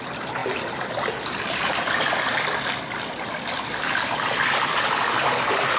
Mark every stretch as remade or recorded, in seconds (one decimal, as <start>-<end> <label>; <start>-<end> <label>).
0.0-5.8 recorded